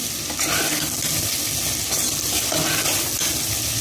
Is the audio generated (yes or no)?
no